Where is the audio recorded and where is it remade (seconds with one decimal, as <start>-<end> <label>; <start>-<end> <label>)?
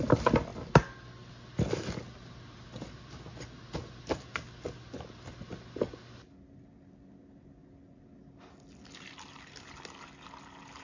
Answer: 0.0-10.8 recorded